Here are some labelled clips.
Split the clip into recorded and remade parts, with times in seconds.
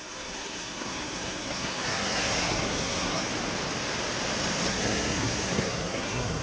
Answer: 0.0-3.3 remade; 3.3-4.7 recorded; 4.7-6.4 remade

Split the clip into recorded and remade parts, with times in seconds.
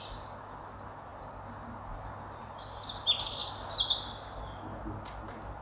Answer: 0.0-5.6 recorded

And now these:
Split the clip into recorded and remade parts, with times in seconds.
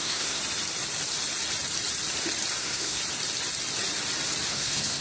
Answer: 0.0-0.4 remade; 0.4-2.6 recorded; 2.6-3.0 remade; 3.0-4.5 recorded; 4.5-5.0 remade